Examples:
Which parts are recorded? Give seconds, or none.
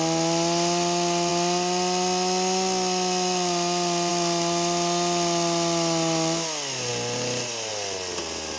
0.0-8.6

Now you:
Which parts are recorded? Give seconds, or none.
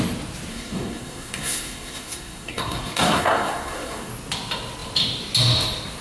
0.0-0.5; 4.1-6.0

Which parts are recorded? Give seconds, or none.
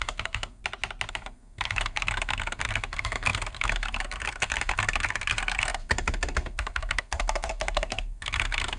0.6-1.1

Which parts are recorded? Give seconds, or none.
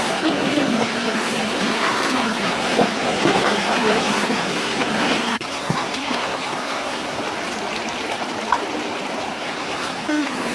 7.2-9.3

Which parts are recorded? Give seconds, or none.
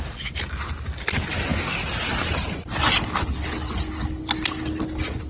0.0-5.3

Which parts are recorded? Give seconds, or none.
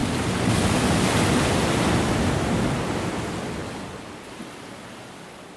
0.0-5.6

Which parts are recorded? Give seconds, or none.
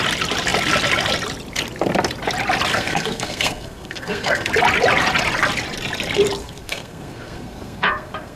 0.0-2.7; 4.5-6.4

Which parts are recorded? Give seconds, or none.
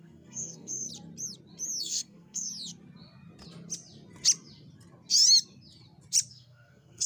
0.9-1.8; 2.5-6.3